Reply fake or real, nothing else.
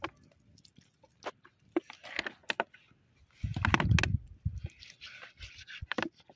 real